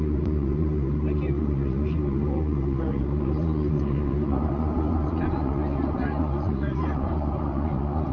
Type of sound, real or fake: fake